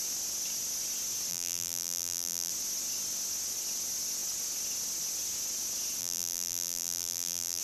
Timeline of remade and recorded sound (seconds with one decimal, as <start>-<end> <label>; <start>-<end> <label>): 0.0-1.3 recorded; 1.3-2.5 remade; 2.5-6.0 recorded; 6.0-7.6 remade